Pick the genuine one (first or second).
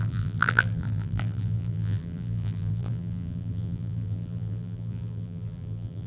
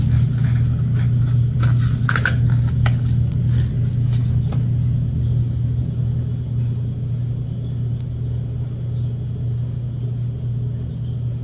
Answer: second